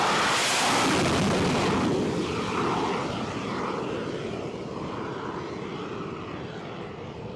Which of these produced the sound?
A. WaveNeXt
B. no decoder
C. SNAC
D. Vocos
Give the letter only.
B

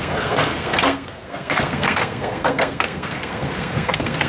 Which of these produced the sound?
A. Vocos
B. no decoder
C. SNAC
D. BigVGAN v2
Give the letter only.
C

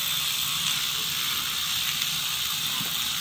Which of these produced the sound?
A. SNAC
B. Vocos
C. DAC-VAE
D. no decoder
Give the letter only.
D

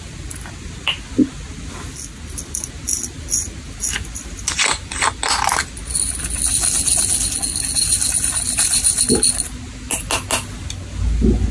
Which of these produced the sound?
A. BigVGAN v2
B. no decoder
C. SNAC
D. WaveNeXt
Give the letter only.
B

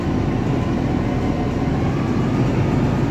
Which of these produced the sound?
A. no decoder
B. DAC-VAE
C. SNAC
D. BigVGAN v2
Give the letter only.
A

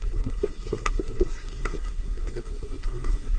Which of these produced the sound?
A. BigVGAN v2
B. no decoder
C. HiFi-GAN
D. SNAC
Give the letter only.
D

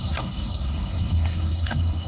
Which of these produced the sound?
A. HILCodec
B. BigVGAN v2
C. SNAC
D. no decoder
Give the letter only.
C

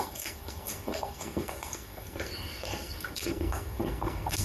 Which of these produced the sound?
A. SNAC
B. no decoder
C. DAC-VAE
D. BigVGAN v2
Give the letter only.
A